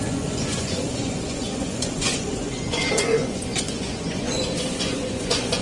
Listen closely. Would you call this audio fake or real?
fake